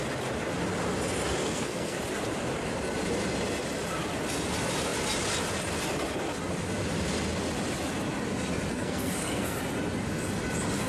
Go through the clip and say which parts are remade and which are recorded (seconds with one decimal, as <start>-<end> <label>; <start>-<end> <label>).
0.0-1.4 recorded; 1.4-2.0 remade; 2.0-8.7 recorded; 8.7-9.6 remade; 9.6-10.9 recorded